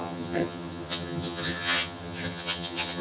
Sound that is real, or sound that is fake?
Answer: fake